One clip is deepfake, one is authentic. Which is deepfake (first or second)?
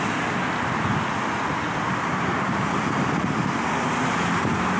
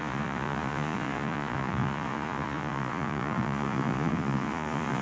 second